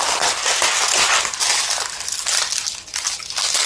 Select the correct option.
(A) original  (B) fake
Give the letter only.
A